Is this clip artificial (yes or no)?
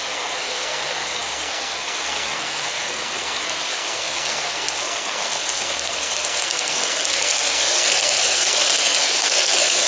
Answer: yes